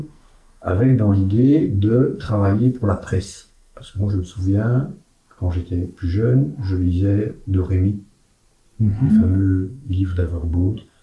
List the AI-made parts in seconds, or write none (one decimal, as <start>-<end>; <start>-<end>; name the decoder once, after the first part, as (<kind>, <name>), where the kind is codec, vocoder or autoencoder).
0.0-4.4 (codec, SNAC); 8.8-11.0